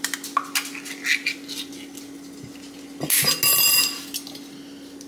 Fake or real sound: real